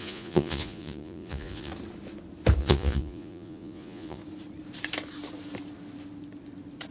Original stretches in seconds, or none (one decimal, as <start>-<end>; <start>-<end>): 1.7-2.6; 4.2-6.9